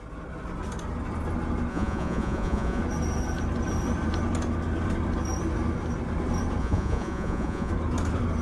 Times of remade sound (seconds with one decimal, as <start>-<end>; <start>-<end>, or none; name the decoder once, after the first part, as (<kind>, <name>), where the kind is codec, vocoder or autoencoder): 1.7-2.8 (vocoder, Vocos); 6.6-7.7